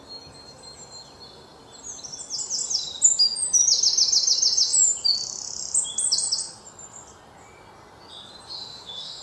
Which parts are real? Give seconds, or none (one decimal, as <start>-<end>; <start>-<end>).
0.0-8.6